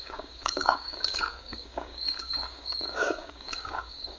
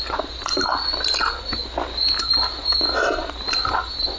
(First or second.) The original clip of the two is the second